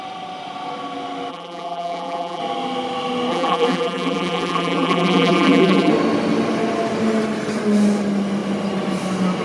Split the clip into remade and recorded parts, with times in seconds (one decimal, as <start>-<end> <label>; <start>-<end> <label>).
0.0-1.3 recorded; 1.3-2.4 remade; 2.4-3.3 recorded; 3.3-5.9 remade; 5.9-9.4 recorded